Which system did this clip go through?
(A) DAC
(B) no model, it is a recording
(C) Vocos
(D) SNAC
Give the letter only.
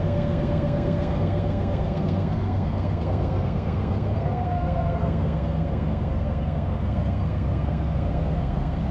D